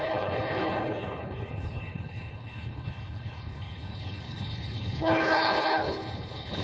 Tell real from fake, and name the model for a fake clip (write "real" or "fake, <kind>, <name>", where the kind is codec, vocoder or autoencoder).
fake, codec, HILCodec